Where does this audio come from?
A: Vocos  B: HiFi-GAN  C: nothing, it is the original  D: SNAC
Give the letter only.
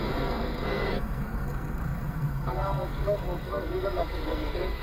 D